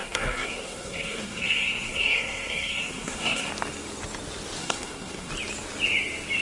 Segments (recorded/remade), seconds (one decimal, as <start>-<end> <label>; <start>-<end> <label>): 0.0-3.5 remade; 3.5-4.6 recorded; 4.6-5.3 remade; 5.3-6.4 recorded